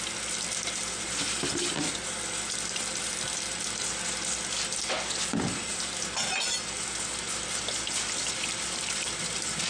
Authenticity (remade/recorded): recorded